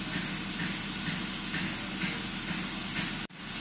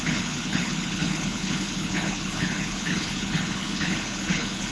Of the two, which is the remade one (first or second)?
second